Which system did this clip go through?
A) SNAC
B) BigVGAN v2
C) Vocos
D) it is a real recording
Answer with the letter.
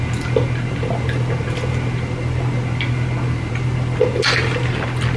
D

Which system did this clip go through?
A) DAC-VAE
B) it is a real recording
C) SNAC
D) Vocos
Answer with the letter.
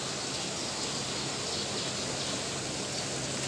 B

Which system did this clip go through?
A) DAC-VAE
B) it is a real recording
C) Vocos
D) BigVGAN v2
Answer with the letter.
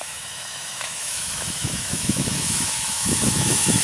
A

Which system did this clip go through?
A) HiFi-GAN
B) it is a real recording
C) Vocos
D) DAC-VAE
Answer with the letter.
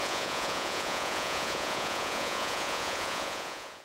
C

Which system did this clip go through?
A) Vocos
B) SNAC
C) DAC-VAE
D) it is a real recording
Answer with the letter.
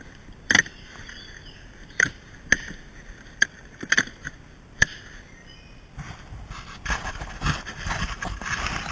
D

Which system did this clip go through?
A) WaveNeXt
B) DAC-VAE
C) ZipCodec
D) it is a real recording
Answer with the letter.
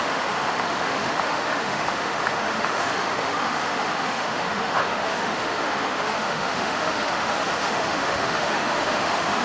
B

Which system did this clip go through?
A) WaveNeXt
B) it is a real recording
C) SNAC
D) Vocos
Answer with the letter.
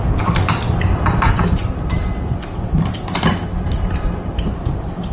B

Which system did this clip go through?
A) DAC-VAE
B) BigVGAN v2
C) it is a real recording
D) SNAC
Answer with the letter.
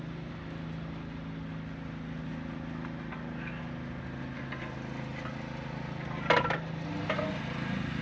C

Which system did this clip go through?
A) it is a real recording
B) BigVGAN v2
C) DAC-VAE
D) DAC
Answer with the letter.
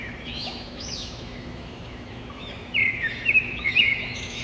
C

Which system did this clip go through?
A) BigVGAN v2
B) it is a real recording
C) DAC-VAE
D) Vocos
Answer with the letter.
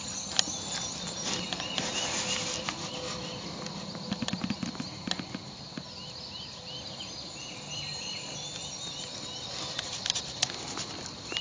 B